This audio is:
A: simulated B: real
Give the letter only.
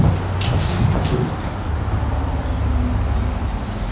B